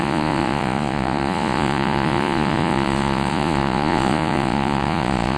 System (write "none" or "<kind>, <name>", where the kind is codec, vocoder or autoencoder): vocoder, Vocos